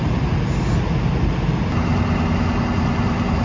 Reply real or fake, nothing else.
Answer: real